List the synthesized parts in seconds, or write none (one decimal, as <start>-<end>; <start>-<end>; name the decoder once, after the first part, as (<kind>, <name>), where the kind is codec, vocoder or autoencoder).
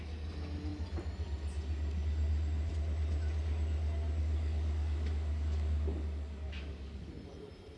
4.2-7.1 (codec, DAC)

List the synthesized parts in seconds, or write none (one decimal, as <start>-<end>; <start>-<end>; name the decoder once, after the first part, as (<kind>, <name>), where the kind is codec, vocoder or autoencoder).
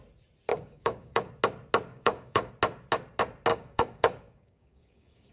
0.5-1.3 (codec, DAC); 1.9-2.5; 3.5-5.3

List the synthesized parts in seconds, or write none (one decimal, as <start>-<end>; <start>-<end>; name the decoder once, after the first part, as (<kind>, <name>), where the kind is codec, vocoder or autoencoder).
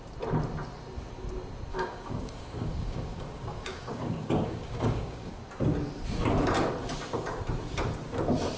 1.7-5.3 (codec, DAC)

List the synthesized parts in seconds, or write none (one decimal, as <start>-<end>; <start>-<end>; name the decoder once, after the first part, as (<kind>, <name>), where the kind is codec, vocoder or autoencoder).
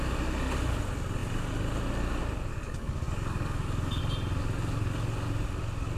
2.5-4.0 (codec, DAC)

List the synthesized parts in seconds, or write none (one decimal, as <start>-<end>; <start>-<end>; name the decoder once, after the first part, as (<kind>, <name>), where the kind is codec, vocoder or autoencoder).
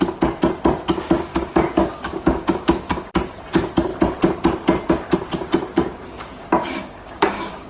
1.3-3.1 (codec, DAC); 5.7-7.7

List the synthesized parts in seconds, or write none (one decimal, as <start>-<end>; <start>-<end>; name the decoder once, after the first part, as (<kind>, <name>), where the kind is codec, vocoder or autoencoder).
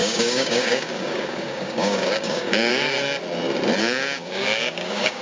0.0-2.7 (codec, DAC); 3.8-5.2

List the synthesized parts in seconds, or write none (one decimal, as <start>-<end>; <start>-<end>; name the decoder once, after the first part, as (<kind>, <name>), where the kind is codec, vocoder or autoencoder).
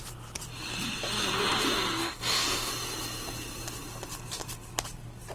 2.0-2.7 (codec, DAC)